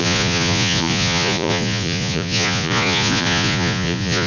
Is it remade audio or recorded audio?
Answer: remade